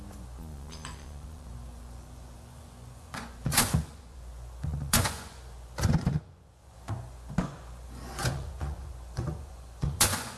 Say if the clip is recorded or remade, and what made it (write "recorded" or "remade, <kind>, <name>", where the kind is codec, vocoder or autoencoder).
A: remade, vocoder, Vocos